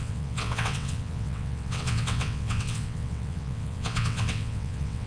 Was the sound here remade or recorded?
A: remade